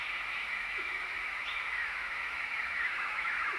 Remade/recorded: remade